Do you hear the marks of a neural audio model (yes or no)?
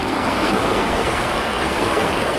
yes